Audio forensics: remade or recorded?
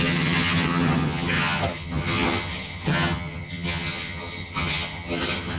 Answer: remade